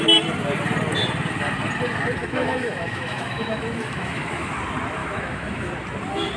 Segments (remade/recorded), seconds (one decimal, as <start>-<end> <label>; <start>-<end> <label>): 0.0-2.2 recorded; 2.2-4.5 remade; 4.5-5.0 recorded; 5.0-5.7 remade; 5.7-6.4 recorded